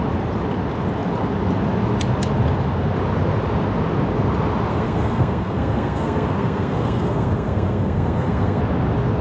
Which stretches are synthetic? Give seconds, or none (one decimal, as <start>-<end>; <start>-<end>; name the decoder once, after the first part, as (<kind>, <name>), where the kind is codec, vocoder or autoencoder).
4.7-8.6 (codec, SNAC)